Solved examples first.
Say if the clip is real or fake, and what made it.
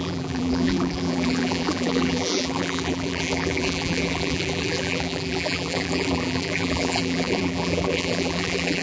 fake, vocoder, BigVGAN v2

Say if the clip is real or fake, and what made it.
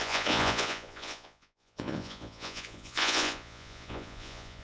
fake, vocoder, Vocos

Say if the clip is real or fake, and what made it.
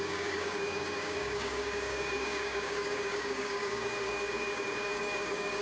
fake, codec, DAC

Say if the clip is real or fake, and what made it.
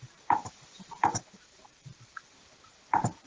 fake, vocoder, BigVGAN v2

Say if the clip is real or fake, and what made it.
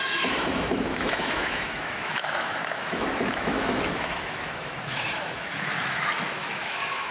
fake, autoencoder, DAC-VAE